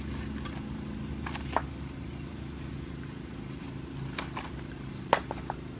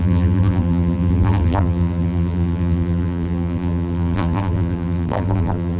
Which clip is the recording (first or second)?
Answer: first